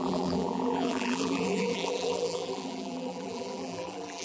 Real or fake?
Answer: fake